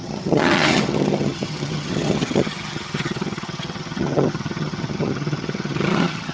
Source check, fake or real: fake